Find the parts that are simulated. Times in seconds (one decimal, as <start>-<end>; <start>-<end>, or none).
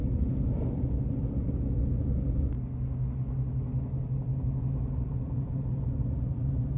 none